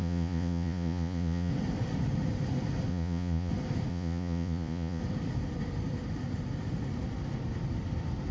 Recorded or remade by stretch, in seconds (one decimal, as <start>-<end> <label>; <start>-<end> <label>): 0.0-1.5 remade; 1.5-2.9 recorded; 2.9-3.5 remade; 3.5-3.9 recorded; 3.9-5.0 remade; 5.0-8.3 recorded